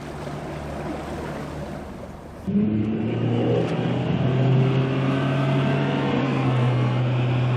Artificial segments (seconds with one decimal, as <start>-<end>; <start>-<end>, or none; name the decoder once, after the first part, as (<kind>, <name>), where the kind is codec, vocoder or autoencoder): 6.2-7.0 (codec, SNAC)